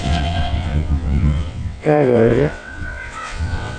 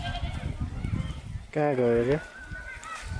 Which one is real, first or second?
second